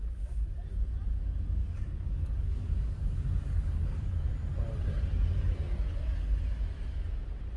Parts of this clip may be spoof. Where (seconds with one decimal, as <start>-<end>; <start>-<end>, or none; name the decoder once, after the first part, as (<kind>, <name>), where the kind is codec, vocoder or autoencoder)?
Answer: 0.0-0.6 (codec, DAC); 1.6-4.3